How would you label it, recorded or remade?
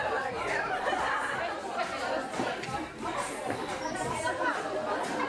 recorded